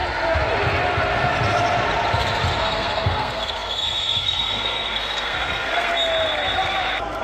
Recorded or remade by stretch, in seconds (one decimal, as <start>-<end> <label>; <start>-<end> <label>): 0.0-2.6 recorded; 2.6-5.9 remade; 5.9-7.2 recorded